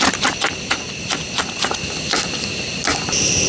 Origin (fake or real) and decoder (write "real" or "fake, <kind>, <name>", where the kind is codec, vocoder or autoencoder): real